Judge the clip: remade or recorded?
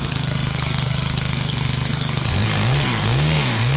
remade